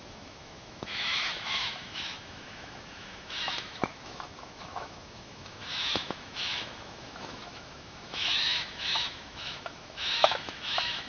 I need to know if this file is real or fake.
fake